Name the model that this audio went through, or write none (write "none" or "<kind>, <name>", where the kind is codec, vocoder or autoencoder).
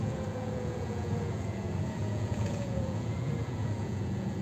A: vocoder, Vocos